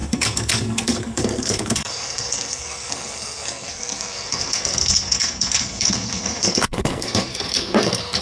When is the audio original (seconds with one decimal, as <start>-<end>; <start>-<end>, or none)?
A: none